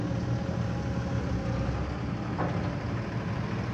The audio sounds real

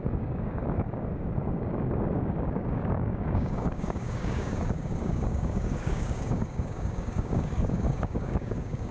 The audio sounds fake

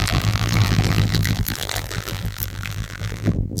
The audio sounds fake